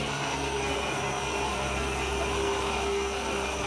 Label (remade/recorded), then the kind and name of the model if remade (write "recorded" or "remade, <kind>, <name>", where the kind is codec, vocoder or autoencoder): remade, codec, SNAC